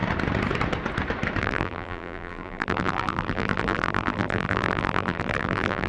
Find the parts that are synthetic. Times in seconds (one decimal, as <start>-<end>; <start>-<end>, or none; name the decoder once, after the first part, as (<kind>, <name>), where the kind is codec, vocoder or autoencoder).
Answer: 1.4-5.9 (vocoder, BigVGAN v2)